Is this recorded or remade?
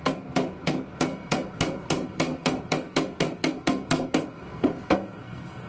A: remade